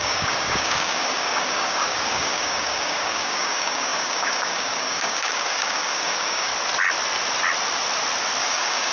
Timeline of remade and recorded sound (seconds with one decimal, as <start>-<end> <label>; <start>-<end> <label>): 0.0-6.5 remade; 6.5-8.4 recorded; 8.4-8.9 remade